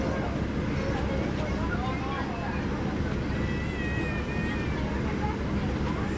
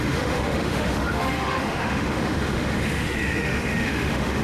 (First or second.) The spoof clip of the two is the second